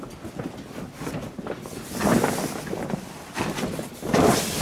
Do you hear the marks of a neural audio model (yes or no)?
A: no